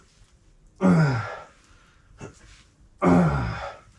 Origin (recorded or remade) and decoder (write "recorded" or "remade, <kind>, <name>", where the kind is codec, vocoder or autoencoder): recorded